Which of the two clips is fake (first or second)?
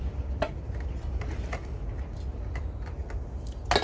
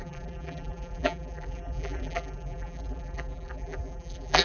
second